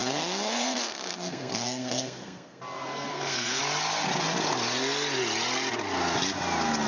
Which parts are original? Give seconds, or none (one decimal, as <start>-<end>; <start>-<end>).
2.6-3.1; 3.6-6.9